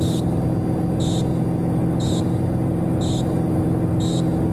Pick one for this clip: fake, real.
real